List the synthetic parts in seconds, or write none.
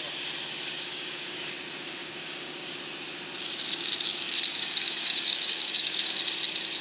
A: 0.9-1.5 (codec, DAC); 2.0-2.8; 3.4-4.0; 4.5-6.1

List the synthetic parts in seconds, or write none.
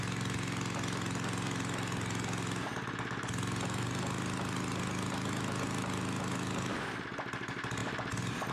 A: none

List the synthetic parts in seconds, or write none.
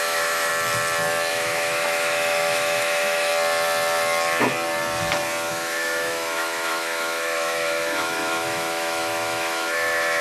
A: 0.0-0.5 (autoencoder, DAC-VAE); 1.3-3.3; 5.5-10.2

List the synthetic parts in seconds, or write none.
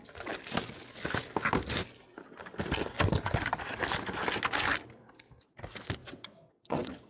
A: 6.0-7.1 (vocoder, WaveNeXt)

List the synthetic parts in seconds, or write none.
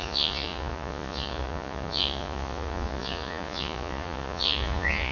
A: 0.0-5.1 (vocoder, Vocos)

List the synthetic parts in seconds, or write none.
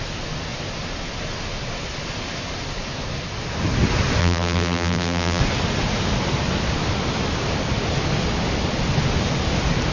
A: 4.2-5.4 (vocoder, BigVGAN v2)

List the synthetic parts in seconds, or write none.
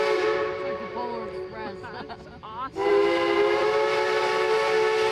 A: none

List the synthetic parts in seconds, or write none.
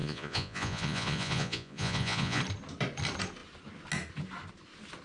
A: 0.0-2.4 (vocoder, Vocos)